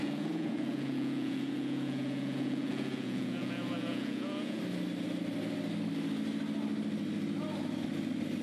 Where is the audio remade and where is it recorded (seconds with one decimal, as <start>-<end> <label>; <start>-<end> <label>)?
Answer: 0.0-4.6 remade; 4.6-8.4 recorded